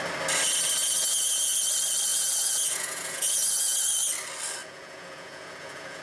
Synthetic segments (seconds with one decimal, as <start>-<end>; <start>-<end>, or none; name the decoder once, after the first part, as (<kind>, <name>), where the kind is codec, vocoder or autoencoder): 0.8-1.5 (vocoder, Vocos); 2.1-3.8; 4.6-6.0